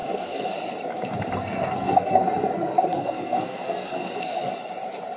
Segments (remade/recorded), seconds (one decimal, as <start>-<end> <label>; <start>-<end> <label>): 0.0-0.5 remade; 0.5-1.4 recorded; 1.4-4.5 remade; 4.5-5.2 recorded

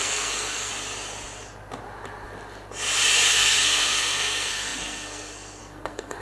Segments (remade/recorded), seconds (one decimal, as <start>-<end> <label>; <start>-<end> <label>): 0.0-0.7 remade; 0.7-3.3 recorded; 3.3-6.2 remade

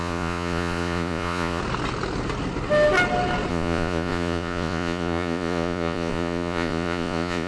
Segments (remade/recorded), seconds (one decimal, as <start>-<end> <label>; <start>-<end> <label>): 0.0-1.6 remade; 1.6-3.5 recorded; 3.5-7.5 remade